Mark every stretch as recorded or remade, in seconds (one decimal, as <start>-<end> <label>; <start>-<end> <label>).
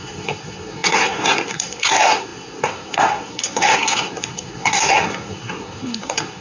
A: 0.0-6.4 remade